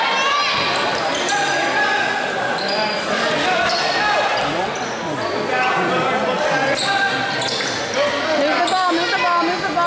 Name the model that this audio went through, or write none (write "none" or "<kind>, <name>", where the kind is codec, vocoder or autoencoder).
none